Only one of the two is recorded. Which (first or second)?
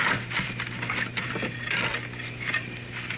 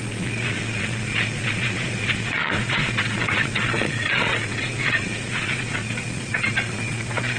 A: first